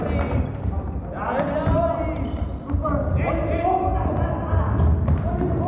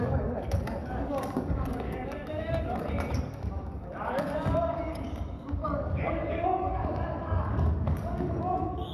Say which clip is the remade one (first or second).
second